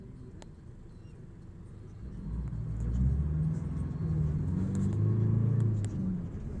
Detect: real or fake real